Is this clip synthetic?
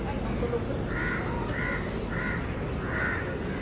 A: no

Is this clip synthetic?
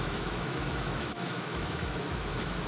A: yes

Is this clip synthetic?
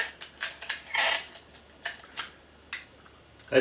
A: no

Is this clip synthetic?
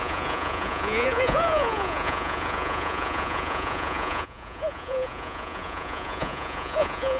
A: yes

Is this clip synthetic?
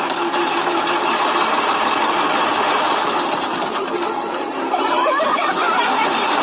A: yes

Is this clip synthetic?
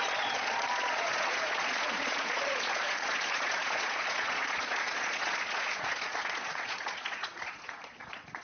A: yes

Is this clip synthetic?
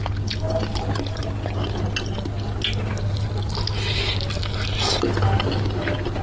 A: no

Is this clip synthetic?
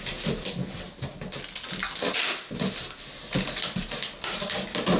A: no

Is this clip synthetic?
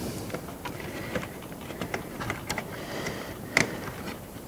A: yes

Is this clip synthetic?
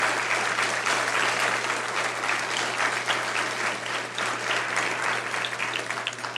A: no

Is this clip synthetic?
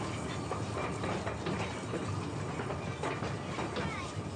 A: no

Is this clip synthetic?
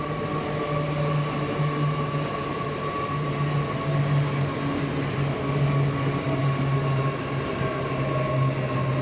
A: no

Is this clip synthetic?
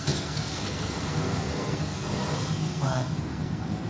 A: yes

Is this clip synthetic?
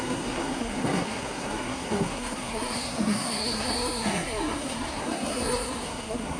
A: yes